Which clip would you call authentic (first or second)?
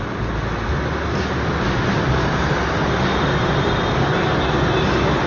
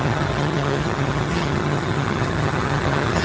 first